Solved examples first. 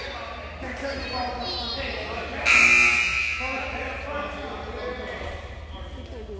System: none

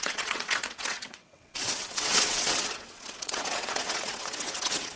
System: vocoder, WaveNeXt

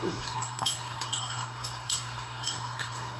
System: codec, SNAC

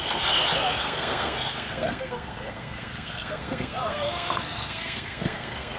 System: codec, SNAC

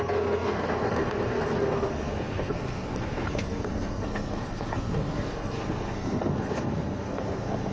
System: codec, SNAC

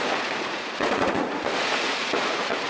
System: vocoder, Vocos